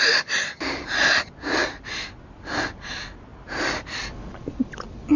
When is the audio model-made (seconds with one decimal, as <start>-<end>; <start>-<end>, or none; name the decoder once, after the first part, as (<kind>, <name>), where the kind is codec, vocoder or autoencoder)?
none